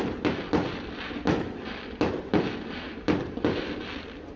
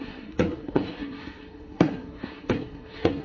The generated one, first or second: second